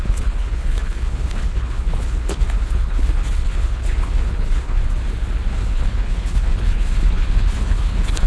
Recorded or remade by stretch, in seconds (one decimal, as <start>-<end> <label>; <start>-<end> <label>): 0.0-4.8 remade; 4.8-5.5 recorded; 5.5-8.3 remade